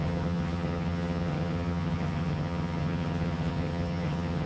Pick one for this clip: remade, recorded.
remade